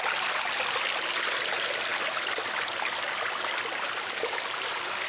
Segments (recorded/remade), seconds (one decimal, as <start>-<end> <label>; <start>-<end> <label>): 0.0-5.1 recorded